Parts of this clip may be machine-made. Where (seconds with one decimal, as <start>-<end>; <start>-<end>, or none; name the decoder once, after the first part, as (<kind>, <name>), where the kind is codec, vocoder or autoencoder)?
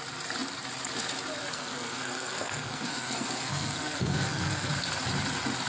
1.5-4.7 (codec, SNAC)